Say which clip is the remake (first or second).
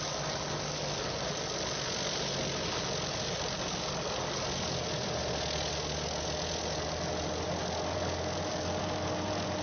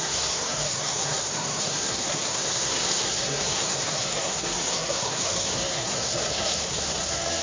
second